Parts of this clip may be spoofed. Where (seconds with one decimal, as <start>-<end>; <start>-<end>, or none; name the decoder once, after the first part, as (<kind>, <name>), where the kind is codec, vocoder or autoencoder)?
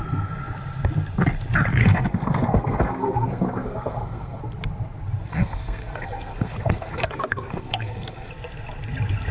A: 1.8-4.4 (codec, SNAC); 5.3-8.3